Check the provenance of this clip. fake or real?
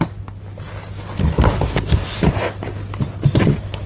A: real